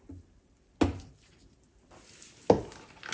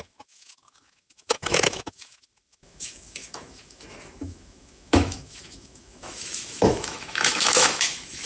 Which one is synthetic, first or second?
second